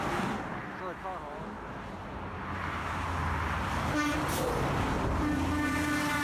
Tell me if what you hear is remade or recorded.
recorded